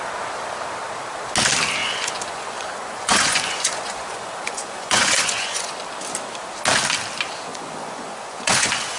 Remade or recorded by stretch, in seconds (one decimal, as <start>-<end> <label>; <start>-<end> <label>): 0.0-1.8 recorded; 1.8-5.7 remade; 5.7-7.5 recorded; 7.5-9.0 remade